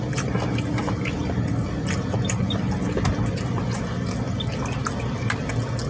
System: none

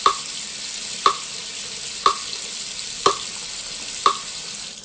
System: none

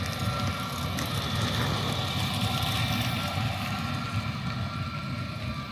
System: none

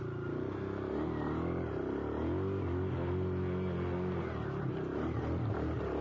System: none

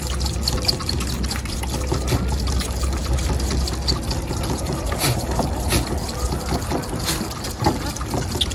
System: none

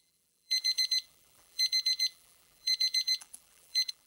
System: vocoder, BigVGAN v2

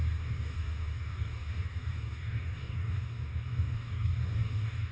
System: codec, DAC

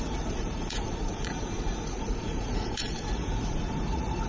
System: vocoder, Vocos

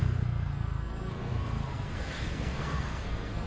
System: codec, SNAC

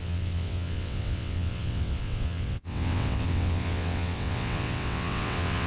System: vocoder, WaveNeXt